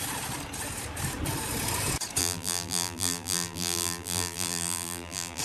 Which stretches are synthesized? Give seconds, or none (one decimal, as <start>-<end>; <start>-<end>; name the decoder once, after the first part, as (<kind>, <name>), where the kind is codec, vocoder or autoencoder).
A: 2.2-5.4 (vocoder, BigVGAN v2)